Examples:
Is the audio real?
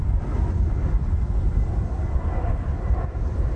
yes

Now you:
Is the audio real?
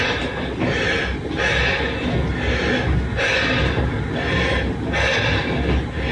yes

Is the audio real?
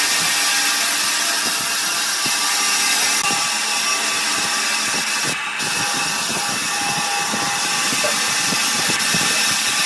yes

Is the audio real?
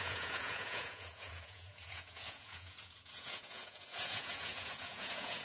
no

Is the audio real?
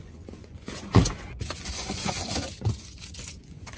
no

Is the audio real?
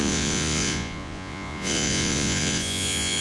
no